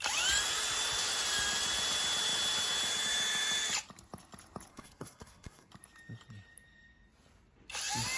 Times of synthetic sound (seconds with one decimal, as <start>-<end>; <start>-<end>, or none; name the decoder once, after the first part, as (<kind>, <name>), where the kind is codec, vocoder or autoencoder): 4.7-5.7 (codec, SNAC)